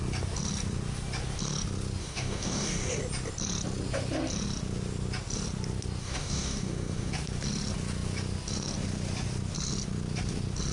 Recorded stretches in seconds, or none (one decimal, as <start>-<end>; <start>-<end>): 0.0-2.0; 3.0-6.0; 7.1-10.7